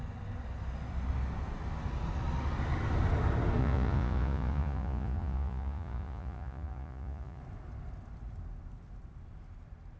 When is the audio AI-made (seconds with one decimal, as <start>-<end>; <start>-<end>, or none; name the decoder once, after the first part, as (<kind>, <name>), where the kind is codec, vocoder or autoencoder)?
3.6-7.4 (vocoder, Vocos)